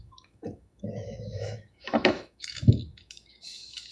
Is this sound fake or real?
fake